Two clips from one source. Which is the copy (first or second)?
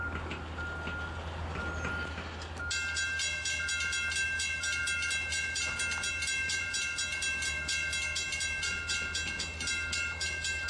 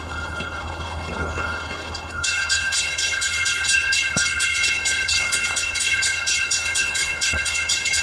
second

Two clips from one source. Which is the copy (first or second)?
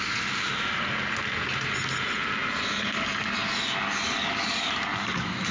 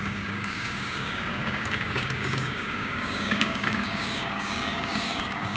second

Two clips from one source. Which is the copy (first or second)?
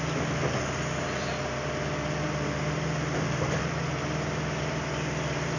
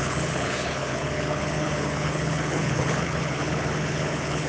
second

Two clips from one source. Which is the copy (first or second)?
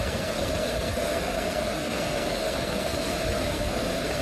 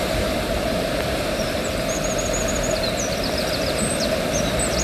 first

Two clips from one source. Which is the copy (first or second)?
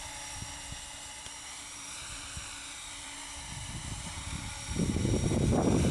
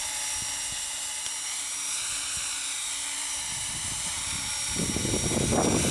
first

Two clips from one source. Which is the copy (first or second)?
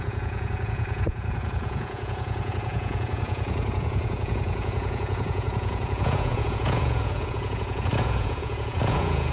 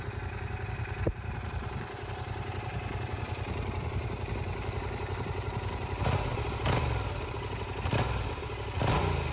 first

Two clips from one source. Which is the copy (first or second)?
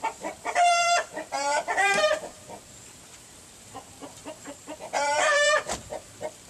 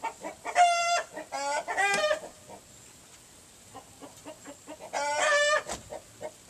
first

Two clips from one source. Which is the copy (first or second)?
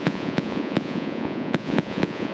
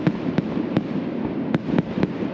first